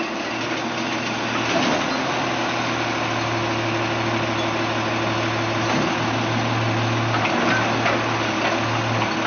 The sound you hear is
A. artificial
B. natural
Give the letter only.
B